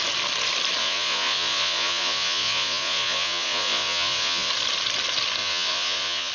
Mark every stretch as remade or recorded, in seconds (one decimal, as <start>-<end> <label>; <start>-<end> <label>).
0.0-0.8 recorded; 0.8-4.5 remade; 4.5-5.4 recorded; 5.4-6.3 remade